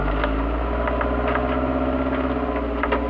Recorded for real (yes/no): yes